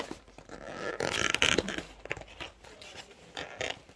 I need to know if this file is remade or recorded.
recorded